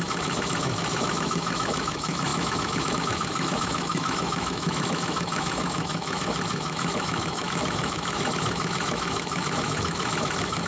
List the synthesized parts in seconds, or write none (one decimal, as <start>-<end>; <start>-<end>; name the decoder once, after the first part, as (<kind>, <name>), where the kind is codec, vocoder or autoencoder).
0.0-10.7 (autoencoder, DAC-VAE)